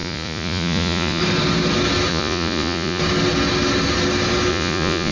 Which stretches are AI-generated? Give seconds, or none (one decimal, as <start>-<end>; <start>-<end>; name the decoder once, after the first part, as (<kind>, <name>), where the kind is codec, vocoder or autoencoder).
0.0-1.2 (vocoder, Vocos); 2.1-3.0; 4.5-5.1